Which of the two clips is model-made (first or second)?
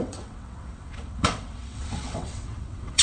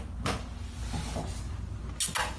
first